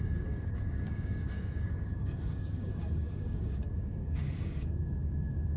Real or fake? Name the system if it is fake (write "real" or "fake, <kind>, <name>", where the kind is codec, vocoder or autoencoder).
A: fake, codec, DAC